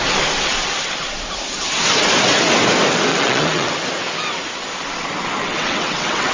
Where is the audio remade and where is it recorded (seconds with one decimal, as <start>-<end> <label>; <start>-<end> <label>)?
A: 0.0-3.1 recorded; 3.1-3.7 remade; 3.7-5.4 recorded; 5.4-6.3 remade